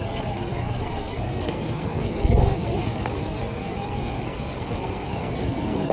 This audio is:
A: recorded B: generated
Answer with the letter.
B